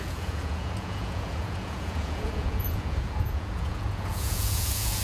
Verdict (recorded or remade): remade